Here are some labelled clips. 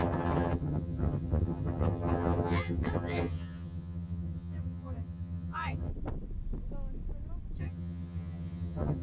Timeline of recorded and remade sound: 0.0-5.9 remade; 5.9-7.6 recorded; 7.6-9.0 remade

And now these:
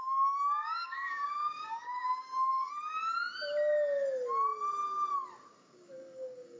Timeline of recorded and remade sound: 0.0-2.7 remade; 2.7-5.5 recorded; 5.5-6.6 remade

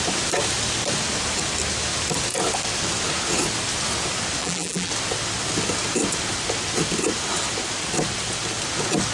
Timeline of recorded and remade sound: 0.0-4.4 recorded; 4.4-4.9 remade; 4.9-9.1 recorded